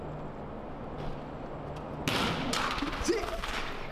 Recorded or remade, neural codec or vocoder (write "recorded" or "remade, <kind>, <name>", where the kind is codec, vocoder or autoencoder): recorded